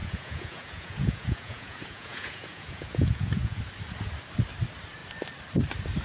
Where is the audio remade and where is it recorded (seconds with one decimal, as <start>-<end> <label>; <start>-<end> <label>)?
0.0-3.6 remade; 3.6-6.0 recorded